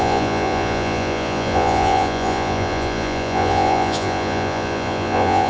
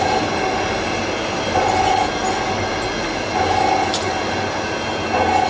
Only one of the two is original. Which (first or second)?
second